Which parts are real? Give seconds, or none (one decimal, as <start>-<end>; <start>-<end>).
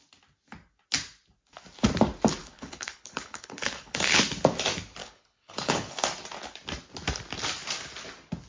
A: 0.0-2.4; 4.2-5.0; 6.0-8.5